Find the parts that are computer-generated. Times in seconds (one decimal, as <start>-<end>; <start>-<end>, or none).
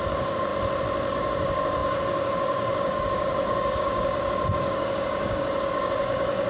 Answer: 0.0-0.5; 1.1-6.5